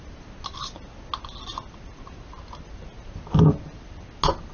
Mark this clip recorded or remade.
recorded